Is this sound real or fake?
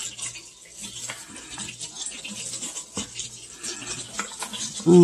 real